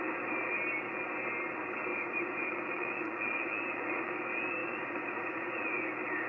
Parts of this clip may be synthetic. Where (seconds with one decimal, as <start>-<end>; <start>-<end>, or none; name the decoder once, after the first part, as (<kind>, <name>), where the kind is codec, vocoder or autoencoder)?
1.9-4.1 (vocoder, Vocos); 4.6-5.7